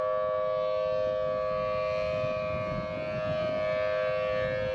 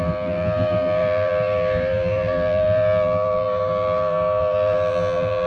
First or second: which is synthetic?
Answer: second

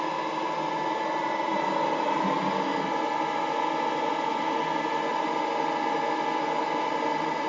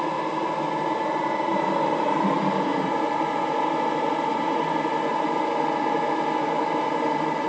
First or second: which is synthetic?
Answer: second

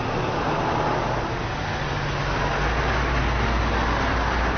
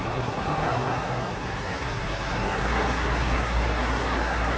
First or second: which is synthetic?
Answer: second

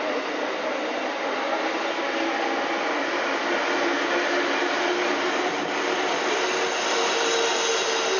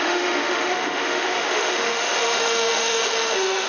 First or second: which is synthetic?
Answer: second